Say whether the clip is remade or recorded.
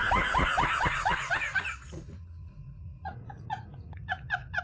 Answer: remade